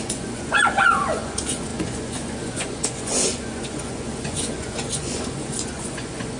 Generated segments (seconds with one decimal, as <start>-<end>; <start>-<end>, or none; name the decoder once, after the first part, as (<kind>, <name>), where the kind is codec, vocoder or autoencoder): 0.0-6.4 (vocoder, Vocos)